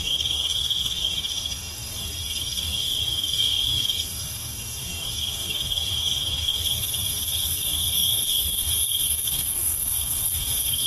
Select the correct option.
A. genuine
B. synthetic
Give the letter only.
B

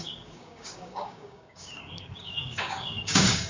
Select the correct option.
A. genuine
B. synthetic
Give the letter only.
B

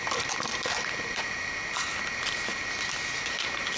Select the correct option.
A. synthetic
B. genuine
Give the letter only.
B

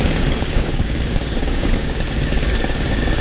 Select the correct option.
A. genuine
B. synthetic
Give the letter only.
B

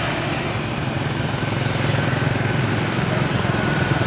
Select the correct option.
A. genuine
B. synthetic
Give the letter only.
A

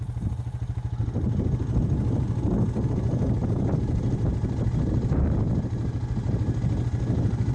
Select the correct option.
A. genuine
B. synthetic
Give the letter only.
A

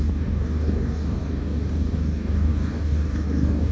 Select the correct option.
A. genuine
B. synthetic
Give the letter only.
B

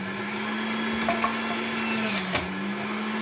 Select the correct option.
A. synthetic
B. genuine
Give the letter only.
B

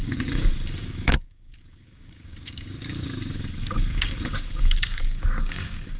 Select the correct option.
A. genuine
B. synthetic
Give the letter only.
B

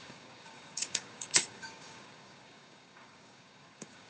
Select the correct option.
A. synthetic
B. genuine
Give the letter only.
A